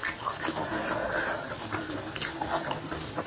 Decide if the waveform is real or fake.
real